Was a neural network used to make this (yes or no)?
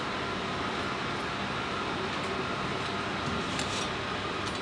no